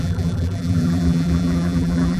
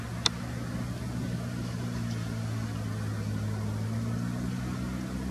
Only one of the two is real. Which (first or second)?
second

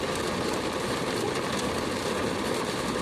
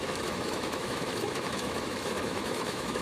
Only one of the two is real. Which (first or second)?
first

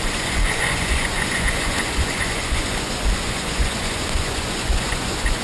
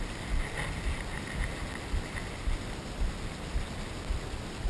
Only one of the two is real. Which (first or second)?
second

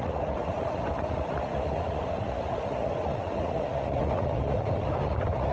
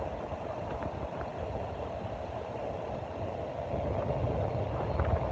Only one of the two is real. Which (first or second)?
second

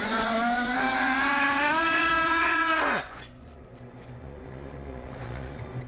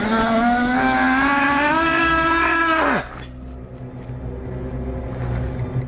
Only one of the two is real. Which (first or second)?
second